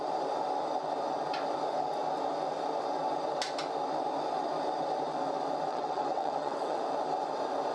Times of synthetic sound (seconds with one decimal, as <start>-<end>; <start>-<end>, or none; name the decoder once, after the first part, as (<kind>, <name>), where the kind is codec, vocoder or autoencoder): 5.7-6.8 (vocoder, WaveNeXt)